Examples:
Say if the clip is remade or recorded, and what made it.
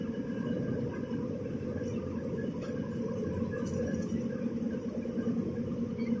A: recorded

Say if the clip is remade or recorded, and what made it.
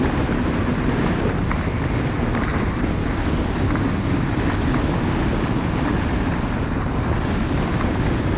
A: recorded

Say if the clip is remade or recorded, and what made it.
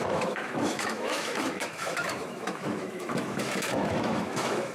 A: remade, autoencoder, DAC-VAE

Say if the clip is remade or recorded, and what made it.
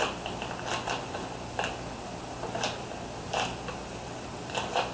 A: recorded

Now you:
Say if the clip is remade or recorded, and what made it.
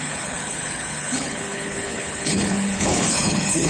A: remade, codec, HILCodec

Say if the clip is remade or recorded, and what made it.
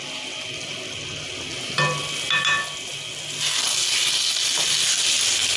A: recorded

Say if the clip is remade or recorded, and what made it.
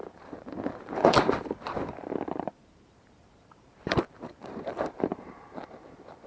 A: remade, vocoder, BigVGAN v2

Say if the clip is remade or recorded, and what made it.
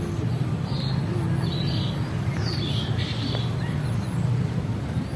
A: recorded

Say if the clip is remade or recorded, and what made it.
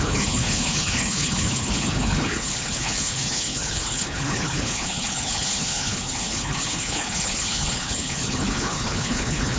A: remade, codec, HILCodec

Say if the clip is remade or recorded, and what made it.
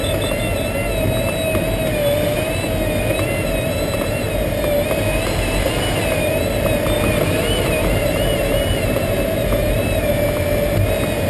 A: recorded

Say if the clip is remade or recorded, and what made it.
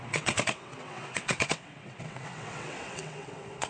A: remade, vocoder, WaveNeXt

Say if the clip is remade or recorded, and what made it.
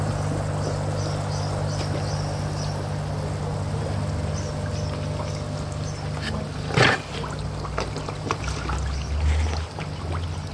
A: recorded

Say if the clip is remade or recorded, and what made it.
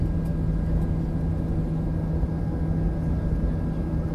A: recorded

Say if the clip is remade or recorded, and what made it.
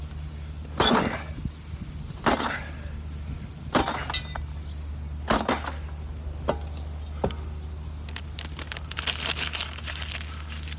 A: recorded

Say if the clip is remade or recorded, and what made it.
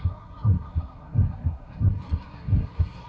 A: remade, codec, SNAC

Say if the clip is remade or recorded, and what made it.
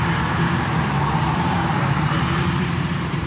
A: remade, vocoder, BigVGAN v2